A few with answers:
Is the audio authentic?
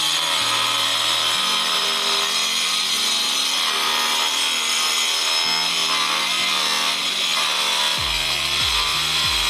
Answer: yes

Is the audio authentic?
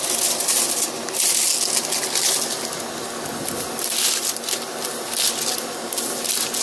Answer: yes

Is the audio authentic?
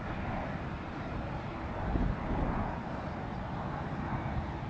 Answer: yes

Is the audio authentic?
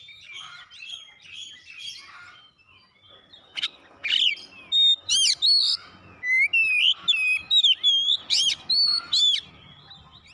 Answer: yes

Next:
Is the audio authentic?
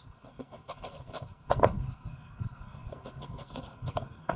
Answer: no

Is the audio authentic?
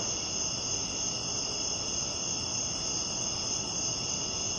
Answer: yes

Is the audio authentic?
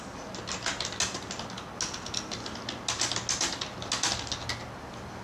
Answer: yes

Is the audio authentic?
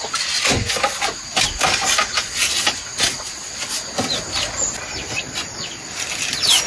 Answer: yes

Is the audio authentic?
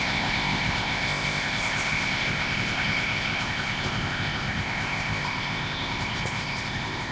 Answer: no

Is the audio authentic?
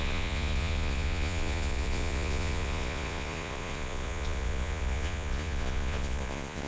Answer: no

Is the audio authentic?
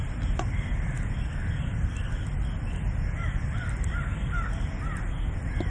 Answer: yes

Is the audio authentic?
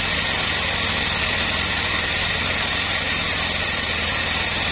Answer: yes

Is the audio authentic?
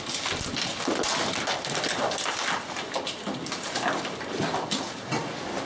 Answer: yes